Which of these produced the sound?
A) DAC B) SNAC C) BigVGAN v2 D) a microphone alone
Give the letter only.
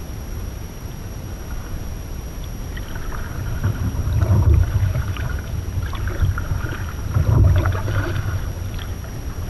C